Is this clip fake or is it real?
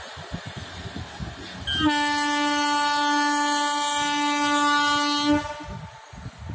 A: real